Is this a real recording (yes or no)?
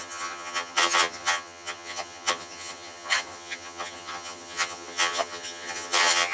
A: no